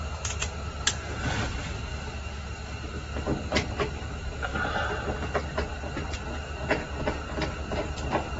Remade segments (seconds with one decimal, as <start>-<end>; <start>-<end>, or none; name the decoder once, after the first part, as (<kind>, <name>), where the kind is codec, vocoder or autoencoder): none